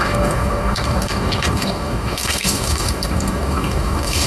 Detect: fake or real fake